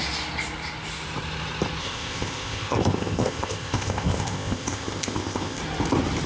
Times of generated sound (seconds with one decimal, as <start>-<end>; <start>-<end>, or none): 1.8-5.6